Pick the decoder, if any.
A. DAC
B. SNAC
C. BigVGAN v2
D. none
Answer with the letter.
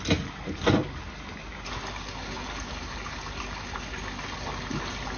D